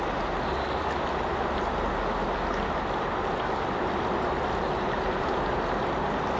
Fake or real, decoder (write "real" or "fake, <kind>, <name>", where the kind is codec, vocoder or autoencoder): real